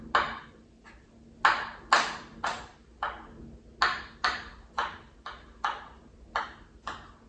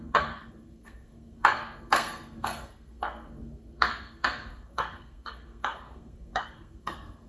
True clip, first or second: first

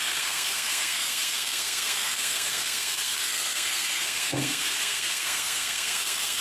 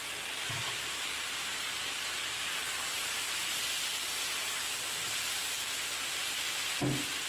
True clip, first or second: second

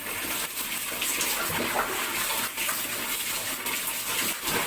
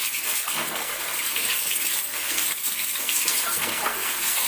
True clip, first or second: first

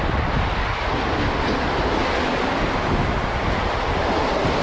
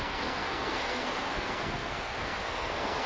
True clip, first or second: first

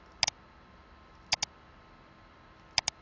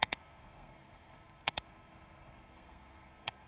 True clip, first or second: first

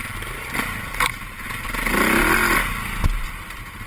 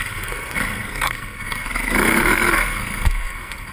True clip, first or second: first